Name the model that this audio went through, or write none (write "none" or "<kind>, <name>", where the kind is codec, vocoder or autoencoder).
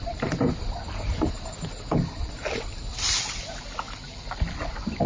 none